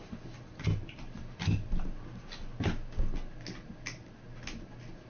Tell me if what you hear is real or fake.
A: real